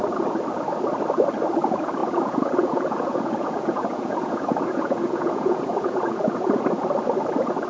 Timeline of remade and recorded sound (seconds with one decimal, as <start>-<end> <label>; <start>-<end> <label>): 0.0-2.0 recorded; 2.0-6.6 remade; 6.6-7.7 recorded